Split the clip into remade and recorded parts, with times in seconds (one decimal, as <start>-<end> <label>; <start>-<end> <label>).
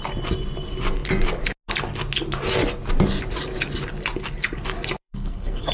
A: 0.0-5.0 recorded; 5.0-5.7 remade